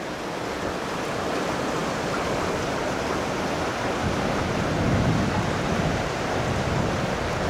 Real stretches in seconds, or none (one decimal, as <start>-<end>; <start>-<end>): 0.0-7.5